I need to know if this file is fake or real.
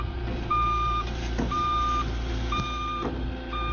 fake